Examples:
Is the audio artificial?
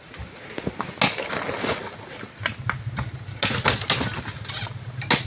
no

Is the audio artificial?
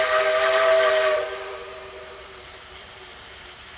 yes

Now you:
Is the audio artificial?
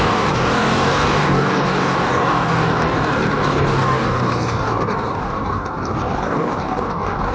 yes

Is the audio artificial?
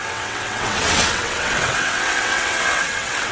yes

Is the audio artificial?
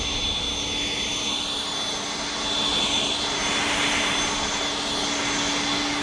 no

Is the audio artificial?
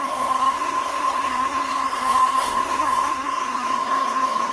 yes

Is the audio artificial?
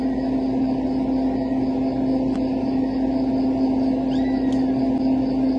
no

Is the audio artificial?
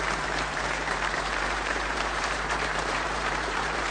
yes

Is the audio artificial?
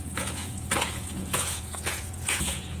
yes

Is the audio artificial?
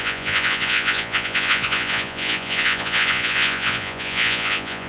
yes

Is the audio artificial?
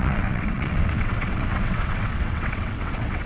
yes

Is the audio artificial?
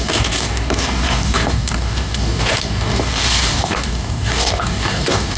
yes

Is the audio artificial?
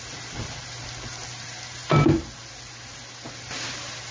no